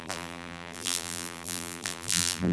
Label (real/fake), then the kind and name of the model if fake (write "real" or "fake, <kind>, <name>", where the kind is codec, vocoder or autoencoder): fake, vocoder, BigVGAN v2